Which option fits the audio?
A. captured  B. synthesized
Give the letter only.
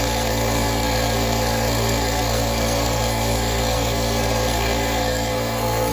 B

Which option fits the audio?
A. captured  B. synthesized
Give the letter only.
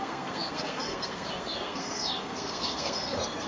B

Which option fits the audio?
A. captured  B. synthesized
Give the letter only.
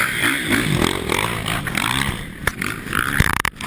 A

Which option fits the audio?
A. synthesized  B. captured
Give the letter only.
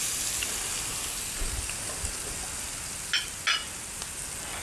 B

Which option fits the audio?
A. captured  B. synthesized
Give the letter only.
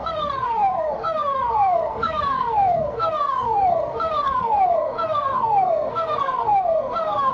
B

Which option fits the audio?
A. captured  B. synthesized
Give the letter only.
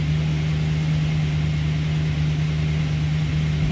A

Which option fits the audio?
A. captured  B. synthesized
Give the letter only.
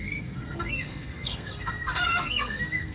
B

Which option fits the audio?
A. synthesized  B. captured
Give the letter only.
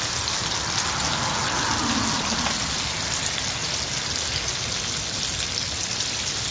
B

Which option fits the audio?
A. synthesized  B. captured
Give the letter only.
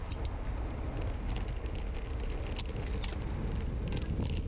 B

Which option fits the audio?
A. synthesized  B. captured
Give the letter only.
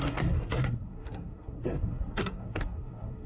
A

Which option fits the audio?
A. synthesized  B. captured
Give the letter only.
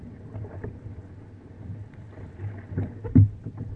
B